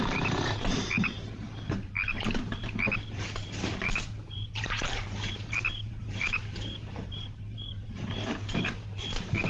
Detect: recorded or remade remade